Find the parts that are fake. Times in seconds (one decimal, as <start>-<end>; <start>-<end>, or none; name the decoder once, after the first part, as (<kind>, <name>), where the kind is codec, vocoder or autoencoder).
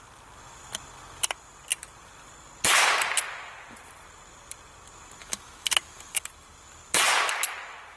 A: 5.2-6.2 (autoencoder, DAC-VAE)